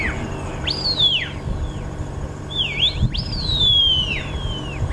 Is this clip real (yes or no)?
yes